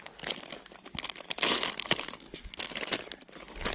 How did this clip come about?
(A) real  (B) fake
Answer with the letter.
A